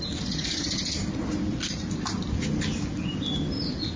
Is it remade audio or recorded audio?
recorded